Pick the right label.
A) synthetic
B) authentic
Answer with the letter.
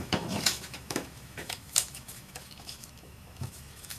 A